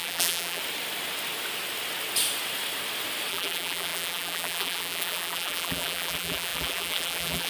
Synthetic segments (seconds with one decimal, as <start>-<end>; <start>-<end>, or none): 0.0-0.6; 3.3-7.5